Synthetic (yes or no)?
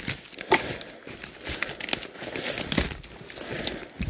no